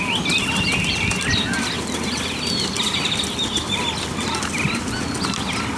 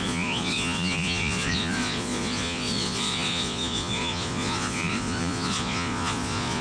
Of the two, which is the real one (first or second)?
first